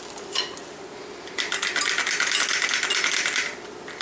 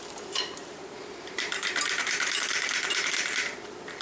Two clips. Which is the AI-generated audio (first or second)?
second